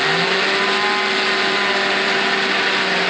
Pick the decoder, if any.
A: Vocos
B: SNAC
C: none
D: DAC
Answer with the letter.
C